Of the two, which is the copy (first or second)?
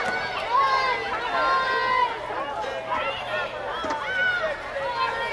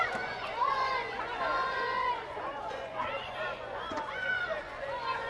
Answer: second